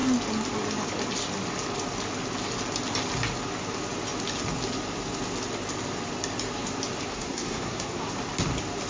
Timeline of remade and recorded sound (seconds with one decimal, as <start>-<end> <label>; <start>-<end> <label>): 0.0-7.1 recorded; 7.1-8.1 remade; 8.1-8.9 recorded